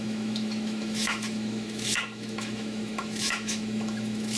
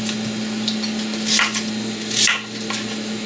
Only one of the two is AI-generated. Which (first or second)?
first